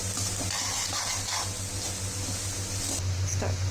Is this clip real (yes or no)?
yes